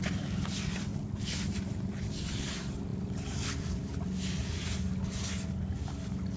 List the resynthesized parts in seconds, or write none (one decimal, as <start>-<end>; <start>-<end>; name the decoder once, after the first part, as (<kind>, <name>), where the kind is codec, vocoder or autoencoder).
none